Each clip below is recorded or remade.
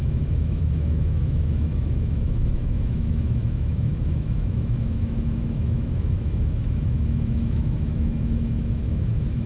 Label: remade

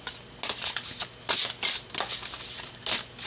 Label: recorded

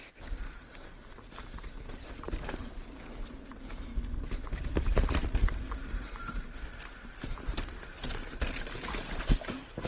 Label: recorded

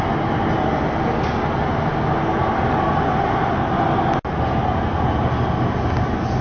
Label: recorded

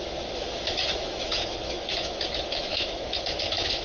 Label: remade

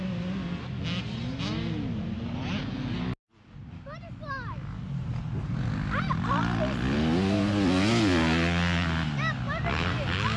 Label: recorded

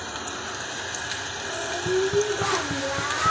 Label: recorded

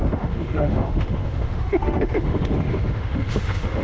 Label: remade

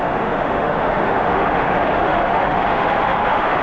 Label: remade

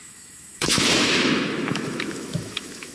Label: remade